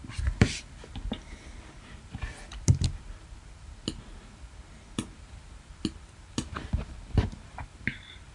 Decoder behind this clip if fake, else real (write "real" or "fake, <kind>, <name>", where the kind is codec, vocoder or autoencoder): fake, vocoder, BigVGAN v2